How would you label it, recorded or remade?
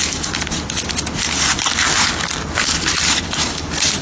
recorded